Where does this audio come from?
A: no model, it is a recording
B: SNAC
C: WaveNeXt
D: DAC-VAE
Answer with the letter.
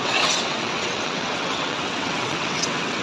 C